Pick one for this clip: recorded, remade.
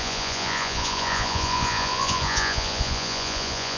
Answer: remade